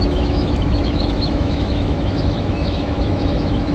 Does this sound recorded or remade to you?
remade